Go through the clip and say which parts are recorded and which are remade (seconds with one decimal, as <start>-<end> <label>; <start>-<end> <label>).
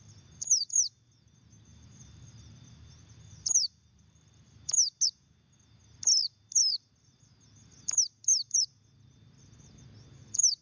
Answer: 0.0-1.7 recorded; 1.7-4.3 remade; 4.3-10.6 recorded